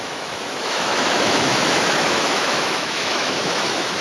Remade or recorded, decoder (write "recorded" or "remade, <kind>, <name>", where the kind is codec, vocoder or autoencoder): remade, autoencoder, DAC-VAE